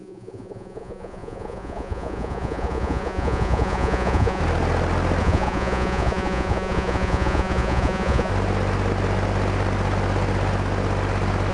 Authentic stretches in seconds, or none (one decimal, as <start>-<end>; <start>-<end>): 4.4-5.2; 8.3-11.5